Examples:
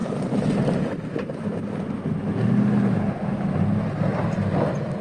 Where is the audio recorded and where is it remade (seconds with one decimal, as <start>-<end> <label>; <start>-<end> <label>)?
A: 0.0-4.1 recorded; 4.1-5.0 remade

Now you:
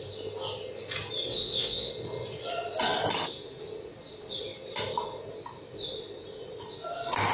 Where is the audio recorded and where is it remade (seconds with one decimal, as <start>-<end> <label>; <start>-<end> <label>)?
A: 0.0-1.3 recorded; 1.3-1.9 remade; 1.9-7.3 recorded

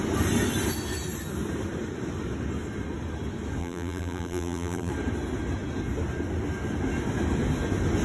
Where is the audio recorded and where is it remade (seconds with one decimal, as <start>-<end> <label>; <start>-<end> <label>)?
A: 0.0-3.6 recorded; 3.6-4.9 remade; 4.9-8.0 recorded

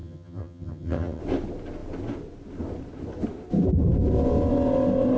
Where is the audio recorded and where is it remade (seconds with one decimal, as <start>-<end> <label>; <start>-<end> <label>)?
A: 0.0-1.2 remade; 1.2-5.2 recorded